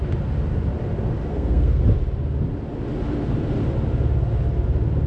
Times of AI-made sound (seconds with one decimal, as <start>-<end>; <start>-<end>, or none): 1.3-1.8

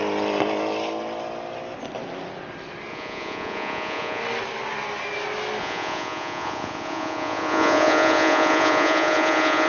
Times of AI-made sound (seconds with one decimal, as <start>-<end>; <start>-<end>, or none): 2.9-4.2; 5.6-9.7

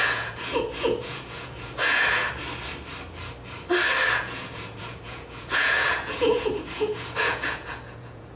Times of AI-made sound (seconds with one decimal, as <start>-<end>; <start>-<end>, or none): 0.0-2.2; 4.1-8.4

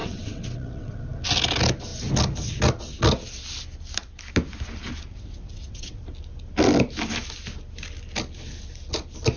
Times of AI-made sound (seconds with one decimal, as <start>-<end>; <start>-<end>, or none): 0.0-1.0; 5.1-6.0

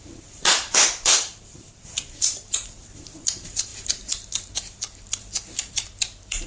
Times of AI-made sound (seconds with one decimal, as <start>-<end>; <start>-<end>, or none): 0.0-6.5